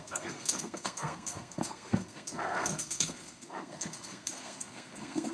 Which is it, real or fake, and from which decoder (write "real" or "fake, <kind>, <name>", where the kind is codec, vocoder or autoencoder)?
fake, codec, SNAC